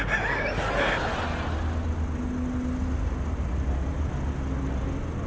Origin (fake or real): real